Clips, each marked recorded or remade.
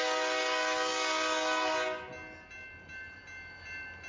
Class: recorded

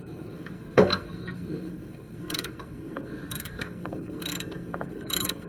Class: remade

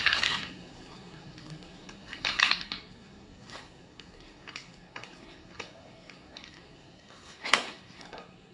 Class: remade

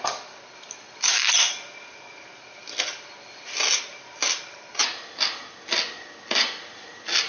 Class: recorded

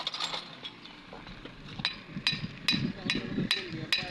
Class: recorded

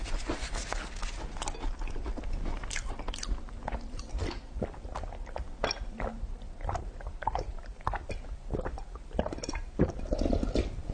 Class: recorded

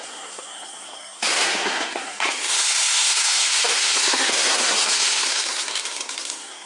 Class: remade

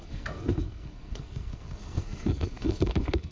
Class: remade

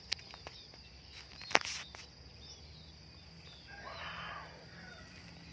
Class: recorded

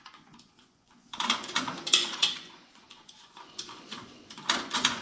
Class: remade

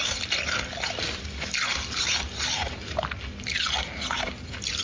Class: recorded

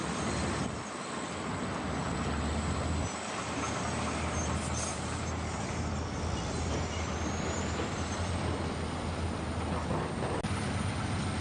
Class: recorded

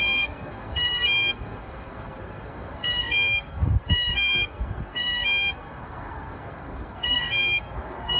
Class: remade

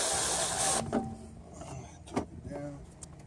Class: recorded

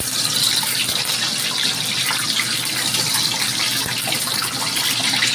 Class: recorded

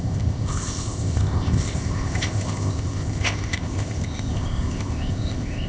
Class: remade